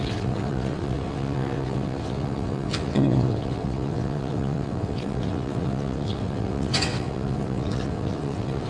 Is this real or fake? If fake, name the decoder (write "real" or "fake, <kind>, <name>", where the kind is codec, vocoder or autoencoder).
fake, vocoder, WaveNeXt